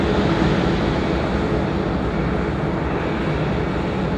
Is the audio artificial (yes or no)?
no